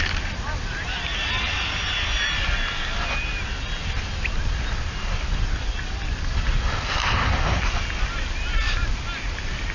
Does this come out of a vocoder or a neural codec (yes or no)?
no